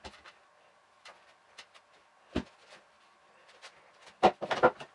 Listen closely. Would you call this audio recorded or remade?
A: recorded